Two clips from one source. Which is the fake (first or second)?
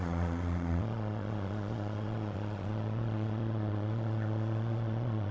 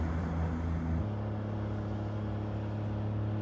first